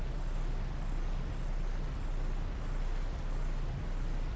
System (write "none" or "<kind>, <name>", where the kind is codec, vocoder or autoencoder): none